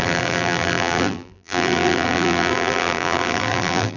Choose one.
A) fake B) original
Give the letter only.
A